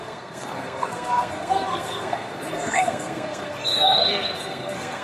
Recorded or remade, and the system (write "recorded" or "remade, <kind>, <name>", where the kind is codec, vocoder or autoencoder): remade, codec, SNAC